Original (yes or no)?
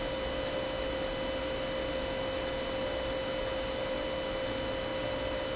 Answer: yes